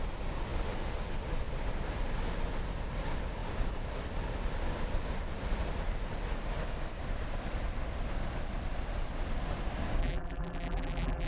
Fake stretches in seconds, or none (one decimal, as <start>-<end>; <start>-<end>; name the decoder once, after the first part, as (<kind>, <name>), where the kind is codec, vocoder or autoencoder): 10.0-11.3 (vocoder, BigVGAN v2)

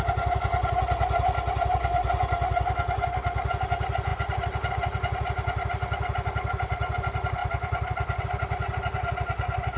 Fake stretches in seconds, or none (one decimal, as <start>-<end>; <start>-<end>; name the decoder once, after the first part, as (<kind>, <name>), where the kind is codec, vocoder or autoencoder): 7.4-8.2 (vocoder, BigVGAN v2)

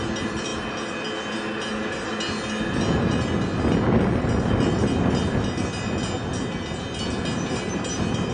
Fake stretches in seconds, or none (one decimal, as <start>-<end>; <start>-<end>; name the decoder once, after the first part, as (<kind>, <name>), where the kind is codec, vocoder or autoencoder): none